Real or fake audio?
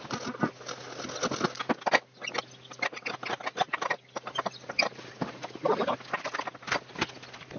real